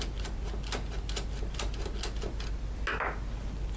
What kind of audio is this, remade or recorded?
recorded